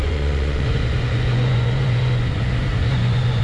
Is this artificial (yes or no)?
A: yes